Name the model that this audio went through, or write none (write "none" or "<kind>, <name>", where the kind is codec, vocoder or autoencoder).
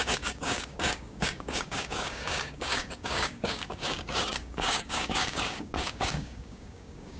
codec, DAC